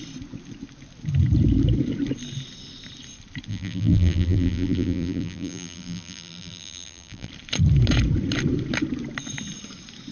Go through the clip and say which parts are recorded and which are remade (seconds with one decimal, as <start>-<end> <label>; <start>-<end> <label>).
0.0-3.5 recorded; 3.5-7.3 remade; 7.3-10.1 recorded